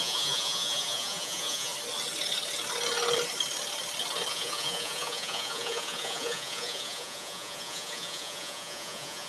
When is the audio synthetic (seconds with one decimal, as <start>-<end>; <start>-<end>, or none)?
0.0-1.7; 4.3-9.3